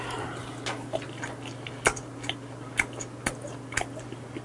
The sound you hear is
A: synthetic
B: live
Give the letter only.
B